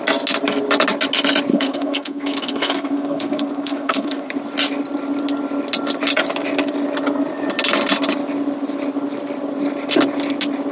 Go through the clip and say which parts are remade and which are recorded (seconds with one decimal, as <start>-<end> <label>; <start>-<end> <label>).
0.0-1.5 recorded; 1.5-4.3 remade; 4.3-10.7 recorded